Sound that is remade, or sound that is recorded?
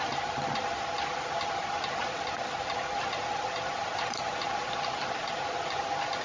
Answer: recorded